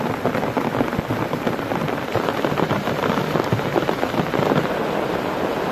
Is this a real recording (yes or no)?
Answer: yes